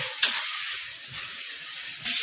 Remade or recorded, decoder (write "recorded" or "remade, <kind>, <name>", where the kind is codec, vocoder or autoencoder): remade, vocoder, Vocos